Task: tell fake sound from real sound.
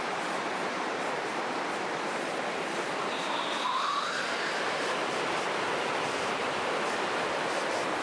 real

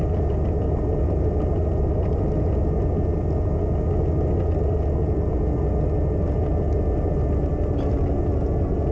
real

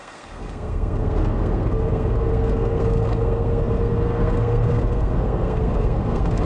fake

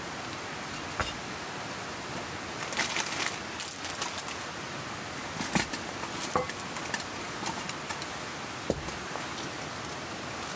real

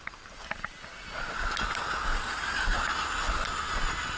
real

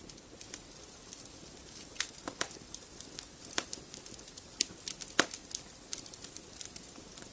real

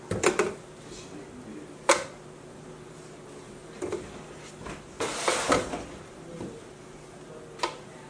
real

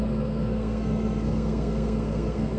fake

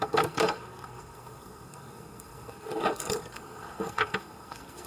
fake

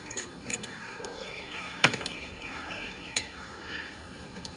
fake